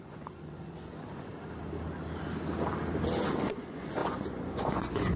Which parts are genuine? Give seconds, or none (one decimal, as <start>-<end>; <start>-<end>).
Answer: 1.3-3.5